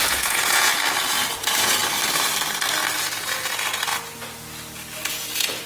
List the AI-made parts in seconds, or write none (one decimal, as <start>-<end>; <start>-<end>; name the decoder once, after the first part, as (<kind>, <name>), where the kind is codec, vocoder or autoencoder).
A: 0.0-0.7 (vocoder, Vocos); 1.4-1.8; 3.0-3.9; 5.1-5.7